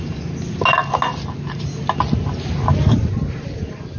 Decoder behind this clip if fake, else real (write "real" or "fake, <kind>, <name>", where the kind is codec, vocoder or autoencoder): real